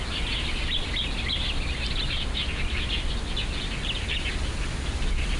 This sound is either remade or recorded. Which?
recorded